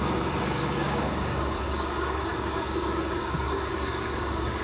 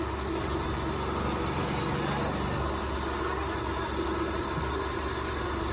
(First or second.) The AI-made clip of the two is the first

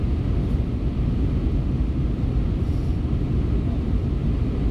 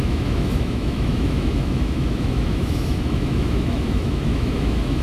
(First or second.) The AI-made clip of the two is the second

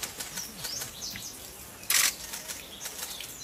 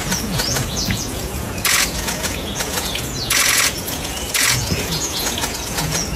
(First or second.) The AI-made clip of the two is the second